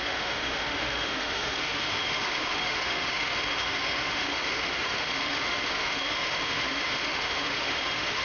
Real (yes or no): no